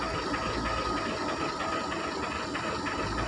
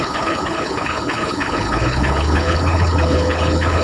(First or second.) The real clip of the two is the first